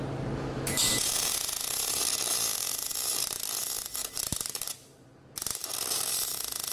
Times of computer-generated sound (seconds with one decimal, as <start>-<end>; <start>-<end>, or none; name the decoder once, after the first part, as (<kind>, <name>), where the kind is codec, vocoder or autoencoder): 4.0-4.7 (vocoder, BigVGAN v2)